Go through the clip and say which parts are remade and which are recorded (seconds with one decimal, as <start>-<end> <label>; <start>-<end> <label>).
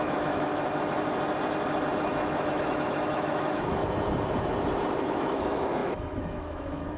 0.0-0.5 remade; 0.5-2.0 recorded; 2.0-3.8 remade; 3.8-5.0 recorded; 5.0-7.0 remade